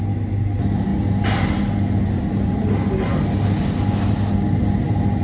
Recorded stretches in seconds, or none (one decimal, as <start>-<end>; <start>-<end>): 0.0-5.2